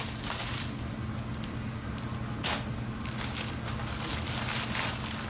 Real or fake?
real